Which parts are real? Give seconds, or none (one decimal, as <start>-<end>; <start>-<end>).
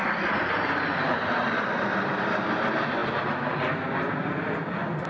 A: 0.0-5.1